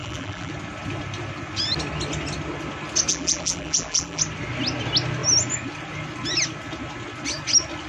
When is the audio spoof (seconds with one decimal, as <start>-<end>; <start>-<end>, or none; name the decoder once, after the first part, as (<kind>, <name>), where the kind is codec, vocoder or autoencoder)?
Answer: 0.0-0.5 (vocoder, BigVGAN v2); 3.1-4.2